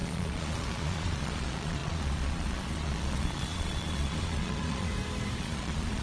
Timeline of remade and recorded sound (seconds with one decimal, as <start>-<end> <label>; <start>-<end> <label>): 0.0-4.9 remade; 4.9-5.4 recorded; 5.4-6.0 remade